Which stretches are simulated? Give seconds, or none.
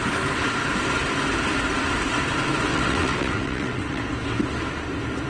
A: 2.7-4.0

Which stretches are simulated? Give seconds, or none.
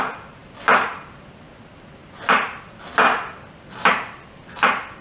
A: 0.4-1.3; 2.0-4.4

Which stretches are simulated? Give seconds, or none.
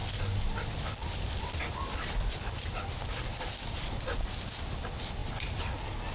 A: none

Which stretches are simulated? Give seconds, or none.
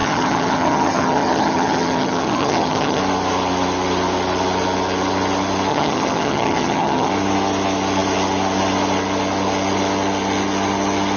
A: 0.0-3.0; 5.7-7.1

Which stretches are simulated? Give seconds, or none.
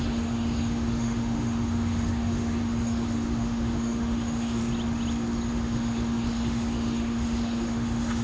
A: 0.0-4.6; 5.5-8.2